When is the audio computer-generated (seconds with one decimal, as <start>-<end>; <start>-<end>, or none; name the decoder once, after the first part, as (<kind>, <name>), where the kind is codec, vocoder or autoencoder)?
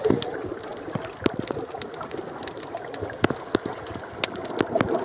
none